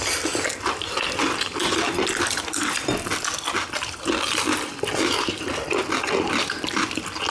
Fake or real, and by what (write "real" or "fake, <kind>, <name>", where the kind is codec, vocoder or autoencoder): real